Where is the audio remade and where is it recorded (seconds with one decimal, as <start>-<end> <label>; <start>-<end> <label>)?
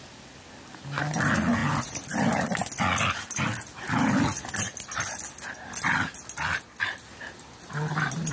0.0-8.3 recorded